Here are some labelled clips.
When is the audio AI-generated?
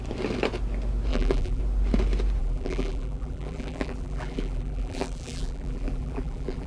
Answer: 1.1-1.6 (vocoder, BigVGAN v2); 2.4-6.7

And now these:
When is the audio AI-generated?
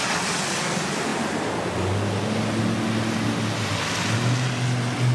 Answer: none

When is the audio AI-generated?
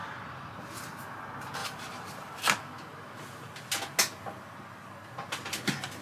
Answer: 1.6-2.4 (vocoder, BigVGAN v2)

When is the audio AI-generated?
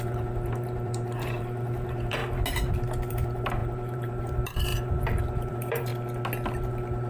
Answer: 0.0-2.2 (vocoder, BigVGAN v2); 3.1-5.9; 6.6-7.1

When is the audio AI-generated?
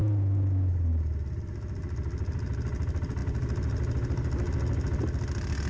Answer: none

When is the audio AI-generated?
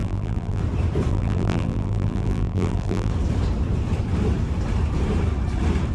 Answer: 0.0-0.6 (vocoder, BigVGAN v2); 1.1-3.1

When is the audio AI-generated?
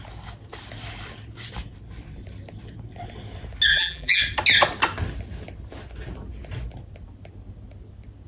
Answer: 3.7-4.2 (vocoder, BigVGAN v2)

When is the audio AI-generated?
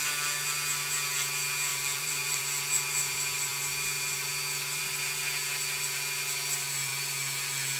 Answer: 1.7-2.4 (vocoder, BigVGAN v2)